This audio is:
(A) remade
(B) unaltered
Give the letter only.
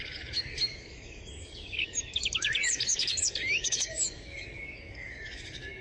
A